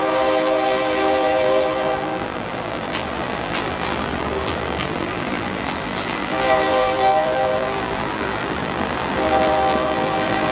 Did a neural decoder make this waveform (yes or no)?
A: yes